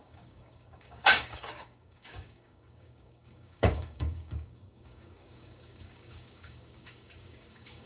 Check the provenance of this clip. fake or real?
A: fake